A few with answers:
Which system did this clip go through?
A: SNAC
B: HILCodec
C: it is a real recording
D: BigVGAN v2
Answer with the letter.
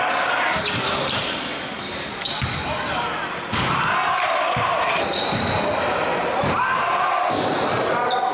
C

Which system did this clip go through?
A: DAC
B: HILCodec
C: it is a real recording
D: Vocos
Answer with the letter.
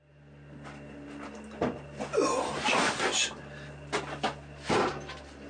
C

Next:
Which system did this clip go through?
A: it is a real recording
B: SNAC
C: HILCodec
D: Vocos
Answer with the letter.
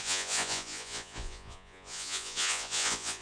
D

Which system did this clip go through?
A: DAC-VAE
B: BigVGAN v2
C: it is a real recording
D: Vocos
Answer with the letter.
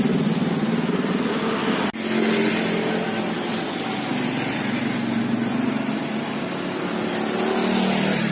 C